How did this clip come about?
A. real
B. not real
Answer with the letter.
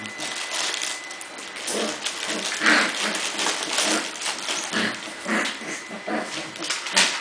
A